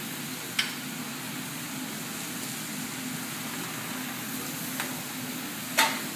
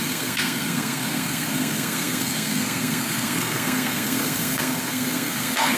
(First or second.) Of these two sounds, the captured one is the first